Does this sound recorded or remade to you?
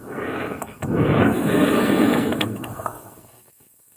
remade